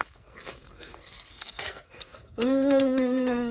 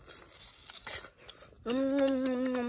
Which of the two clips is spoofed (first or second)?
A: first